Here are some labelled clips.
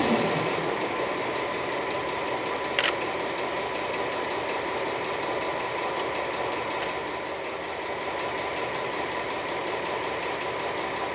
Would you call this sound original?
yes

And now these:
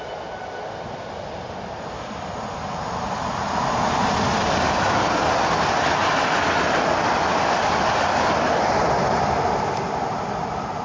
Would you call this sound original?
yes